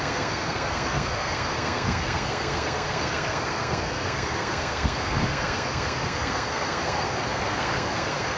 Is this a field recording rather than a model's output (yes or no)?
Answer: no